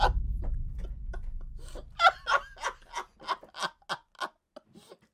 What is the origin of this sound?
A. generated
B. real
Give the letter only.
B